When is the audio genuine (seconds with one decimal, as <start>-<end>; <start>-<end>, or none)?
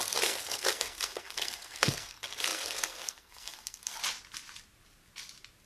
4.0-5.7